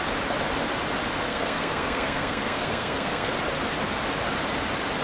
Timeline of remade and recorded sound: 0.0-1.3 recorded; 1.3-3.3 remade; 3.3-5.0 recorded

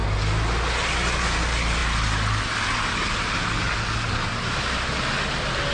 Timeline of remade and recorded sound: 0.0-5.7 recorded

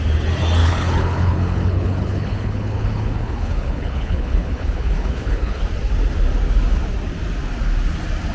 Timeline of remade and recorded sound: 0.0-0.6 recorded; 0.6-5.6 remade; 5.6-8.3 recorded

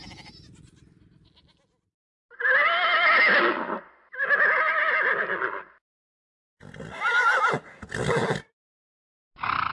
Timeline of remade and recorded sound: 0.0-9.7 recorded

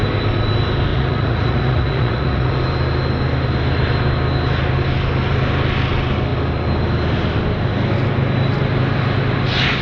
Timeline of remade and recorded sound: 0.0-0.9 recorded; 0.9-2.6 remade; 2.6-9.8 recorded

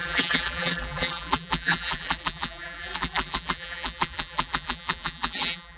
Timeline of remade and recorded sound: 0.0-5.8 remade